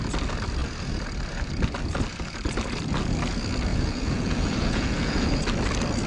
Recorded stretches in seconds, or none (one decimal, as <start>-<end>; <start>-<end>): 0.0-3.7; 5.4-6.1